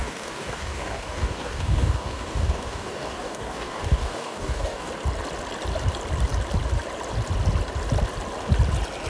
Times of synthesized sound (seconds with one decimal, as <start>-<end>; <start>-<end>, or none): 0.0-4.9